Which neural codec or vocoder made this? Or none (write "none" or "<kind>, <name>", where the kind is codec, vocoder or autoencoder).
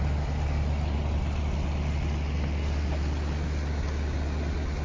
none